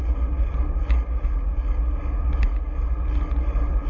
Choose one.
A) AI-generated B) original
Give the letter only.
B